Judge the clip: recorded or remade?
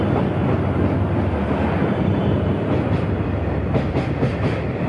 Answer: remade